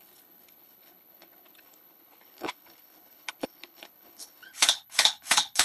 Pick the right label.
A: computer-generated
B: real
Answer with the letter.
A